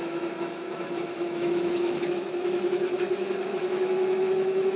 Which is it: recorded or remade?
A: remade